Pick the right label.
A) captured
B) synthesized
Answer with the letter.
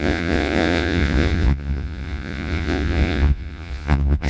B